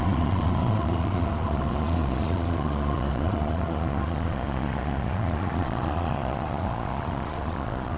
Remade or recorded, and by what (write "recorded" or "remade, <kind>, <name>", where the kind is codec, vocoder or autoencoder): remade, vocoder, Vocos